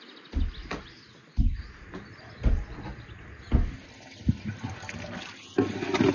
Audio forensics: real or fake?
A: real